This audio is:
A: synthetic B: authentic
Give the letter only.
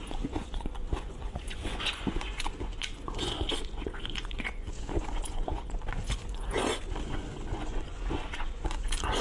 A